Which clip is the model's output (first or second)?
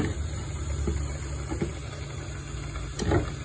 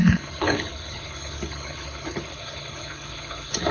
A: second